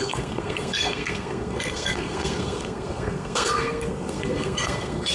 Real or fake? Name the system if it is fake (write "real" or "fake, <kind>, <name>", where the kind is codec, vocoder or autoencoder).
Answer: fake, codec, SNAC